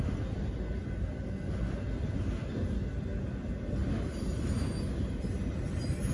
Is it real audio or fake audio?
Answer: real